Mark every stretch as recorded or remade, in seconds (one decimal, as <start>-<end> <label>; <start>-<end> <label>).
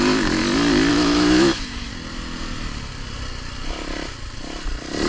0.0-0.4 remade; 0.4-0.9 recorded; 0.9-1.9 remade; 1.9-5.1 recorded